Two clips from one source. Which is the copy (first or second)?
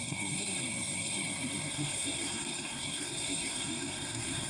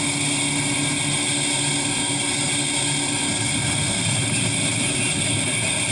first